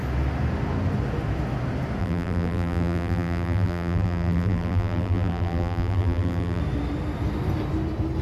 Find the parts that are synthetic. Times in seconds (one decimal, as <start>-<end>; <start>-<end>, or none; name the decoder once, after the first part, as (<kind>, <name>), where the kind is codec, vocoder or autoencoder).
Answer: 2.0-6.6 (vocoder, BigVGAN v2)